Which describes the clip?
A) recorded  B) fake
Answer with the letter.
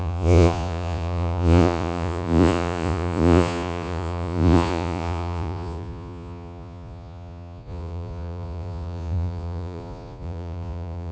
B